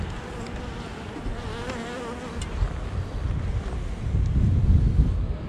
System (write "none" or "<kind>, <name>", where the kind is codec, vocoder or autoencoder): none